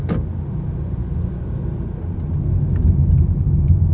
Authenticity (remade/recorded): recorded